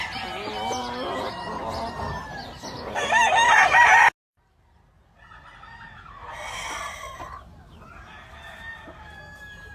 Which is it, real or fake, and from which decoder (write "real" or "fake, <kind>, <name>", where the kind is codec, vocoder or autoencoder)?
real